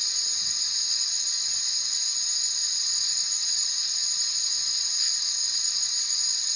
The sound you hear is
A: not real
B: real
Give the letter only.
B